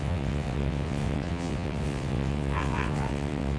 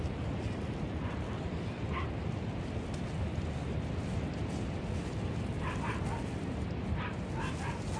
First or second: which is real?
second